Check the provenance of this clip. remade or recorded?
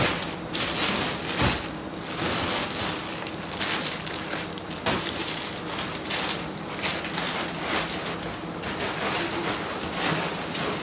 recorded